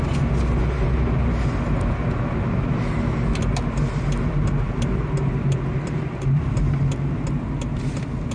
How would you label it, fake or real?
real